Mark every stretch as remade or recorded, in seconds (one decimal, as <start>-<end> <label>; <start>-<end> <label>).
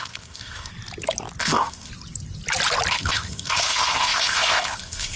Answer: 0.0-0.7 remade; 0.7-1.4 recorded; 1.4-1.9 remade; 1.9-2.9 recorded; 2.9-5.2 remade